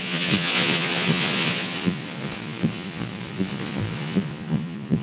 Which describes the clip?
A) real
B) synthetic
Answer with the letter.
B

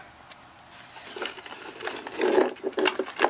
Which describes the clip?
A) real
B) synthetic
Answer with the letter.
A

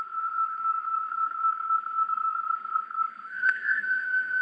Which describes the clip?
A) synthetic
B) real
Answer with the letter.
A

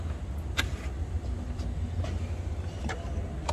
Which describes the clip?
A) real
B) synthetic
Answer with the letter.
A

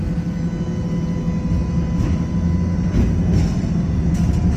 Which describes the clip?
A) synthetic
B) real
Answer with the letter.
B